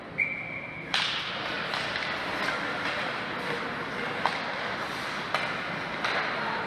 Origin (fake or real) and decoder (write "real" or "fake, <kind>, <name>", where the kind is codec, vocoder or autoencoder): real